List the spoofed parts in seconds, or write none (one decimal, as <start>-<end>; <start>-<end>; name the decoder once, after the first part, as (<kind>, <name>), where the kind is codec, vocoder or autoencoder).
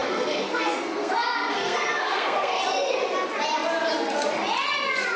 0.0-2.6 (codec, SNAC)